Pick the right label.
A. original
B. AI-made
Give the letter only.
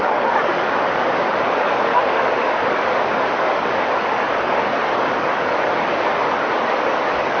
B